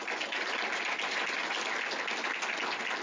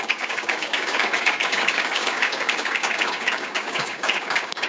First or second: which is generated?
second